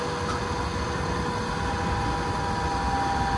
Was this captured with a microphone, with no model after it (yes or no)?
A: yes